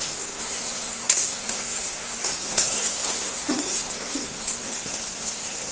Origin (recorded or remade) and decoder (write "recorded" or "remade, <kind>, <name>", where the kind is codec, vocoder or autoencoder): remade, codec, SNAC